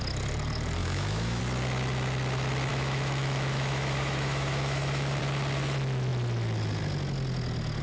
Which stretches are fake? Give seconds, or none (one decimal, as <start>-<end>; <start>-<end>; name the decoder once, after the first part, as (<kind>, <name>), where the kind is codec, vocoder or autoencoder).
0.8-1.4 (autoencoder, DAC-VAE); 2.7-5.2